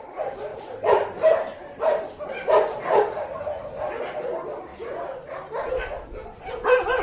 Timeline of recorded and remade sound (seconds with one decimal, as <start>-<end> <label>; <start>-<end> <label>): 0.0-0.5 recorded; 0.5-3.4 remade; 3.4-7.0 recorded